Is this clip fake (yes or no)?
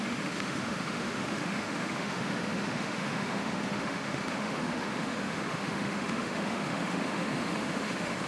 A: yes